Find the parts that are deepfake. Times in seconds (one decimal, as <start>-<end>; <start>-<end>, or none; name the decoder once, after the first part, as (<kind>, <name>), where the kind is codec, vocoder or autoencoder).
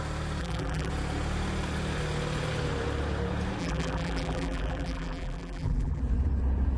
0.4-0.9 (vocoder, BigVGAN v2); 3.6-6.0